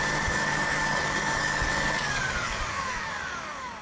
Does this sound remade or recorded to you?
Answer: remade